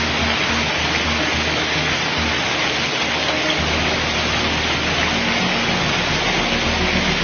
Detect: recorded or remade recorded